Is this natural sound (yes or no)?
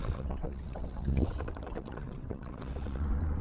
no